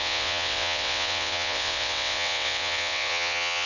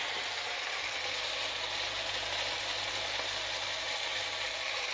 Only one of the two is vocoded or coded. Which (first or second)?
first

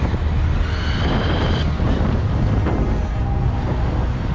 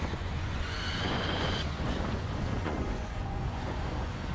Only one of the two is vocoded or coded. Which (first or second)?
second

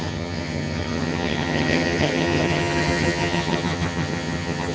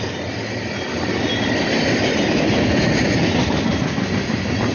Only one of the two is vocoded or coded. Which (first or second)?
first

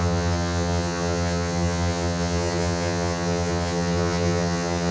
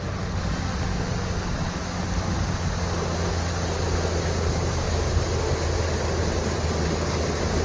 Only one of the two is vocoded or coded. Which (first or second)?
first